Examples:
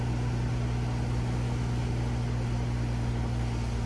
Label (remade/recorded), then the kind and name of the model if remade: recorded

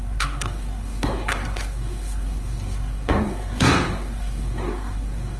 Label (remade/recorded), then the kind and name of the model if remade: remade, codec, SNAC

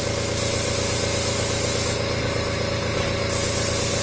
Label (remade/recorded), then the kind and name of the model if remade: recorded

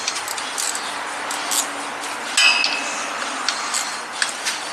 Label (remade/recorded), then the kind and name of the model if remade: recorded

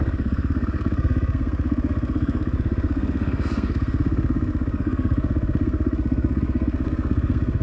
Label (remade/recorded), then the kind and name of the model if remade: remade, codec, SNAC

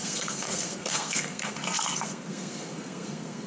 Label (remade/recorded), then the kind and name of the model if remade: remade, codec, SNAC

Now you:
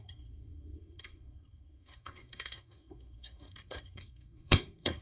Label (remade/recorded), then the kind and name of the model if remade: remade, codec, SNAC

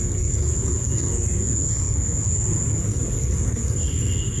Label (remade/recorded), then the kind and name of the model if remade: remade, codec, SNAC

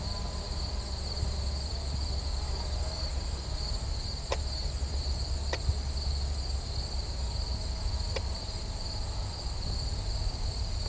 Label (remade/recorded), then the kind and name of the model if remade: recorded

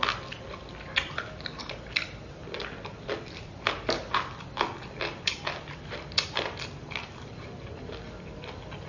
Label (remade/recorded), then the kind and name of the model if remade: recorded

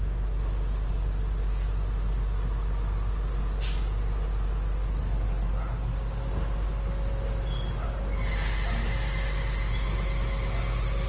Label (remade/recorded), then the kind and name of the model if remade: recorded